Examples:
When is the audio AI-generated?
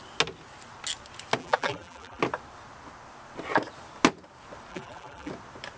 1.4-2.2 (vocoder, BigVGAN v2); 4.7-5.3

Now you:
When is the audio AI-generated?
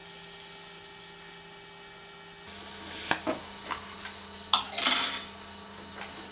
none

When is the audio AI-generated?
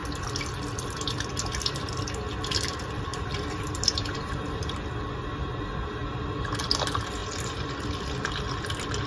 3.1-4.7 (vocoder, BigVGAN v2)